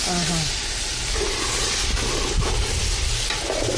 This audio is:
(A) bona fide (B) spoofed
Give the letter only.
A